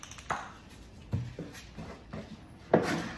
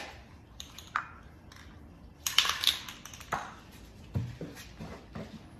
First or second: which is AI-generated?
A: second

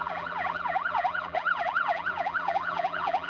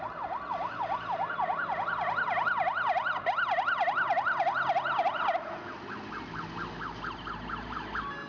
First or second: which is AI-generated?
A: first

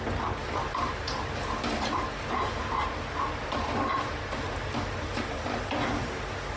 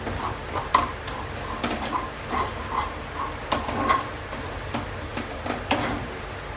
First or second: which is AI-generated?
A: second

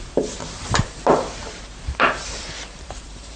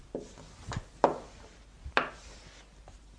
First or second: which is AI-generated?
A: first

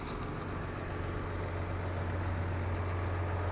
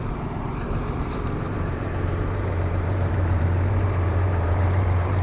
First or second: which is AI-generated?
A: second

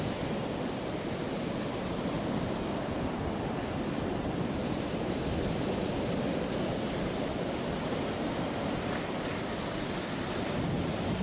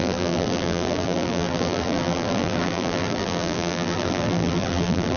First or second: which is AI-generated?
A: second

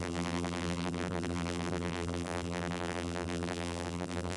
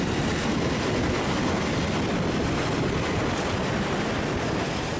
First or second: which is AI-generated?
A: first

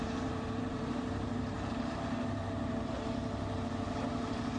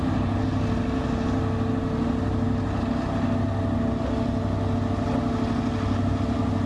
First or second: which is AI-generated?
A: first